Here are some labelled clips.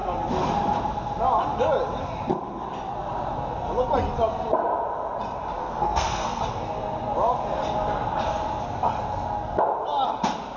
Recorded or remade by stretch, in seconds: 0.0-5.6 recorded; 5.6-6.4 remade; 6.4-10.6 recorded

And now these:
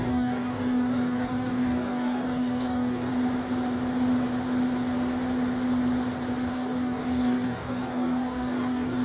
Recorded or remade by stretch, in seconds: 0.0-3.1 remade; 3.1-6.5 recorded; 6.5-9.0 remade

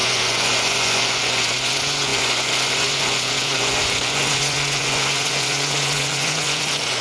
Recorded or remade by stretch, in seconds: 0.0-7.0 remade

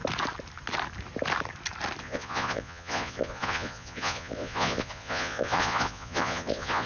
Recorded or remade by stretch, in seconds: 0.0-2.0 recorded; 2.0-6.9 remade

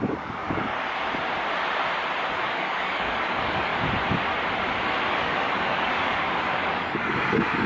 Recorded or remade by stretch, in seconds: 0.0-0.7 remade; 0.7-2.3 recorded; 2.3-3.7 remade; 3.7-5.1 recorded; 5.1-7.7 remade

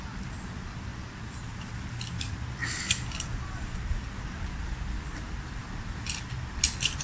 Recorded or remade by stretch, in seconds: 0.0-2.6 recorded; 2.6-3.7 remade; 3.7-7.0 recorded

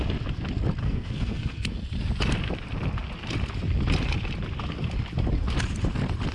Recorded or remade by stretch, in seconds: 0.0-0.8 recorded; 0.8-1.7 remade; 1.7-6.3 recorded